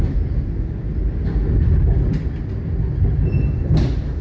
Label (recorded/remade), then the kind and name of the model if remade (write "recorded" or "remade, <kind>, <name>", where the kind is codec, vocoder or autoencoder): recorded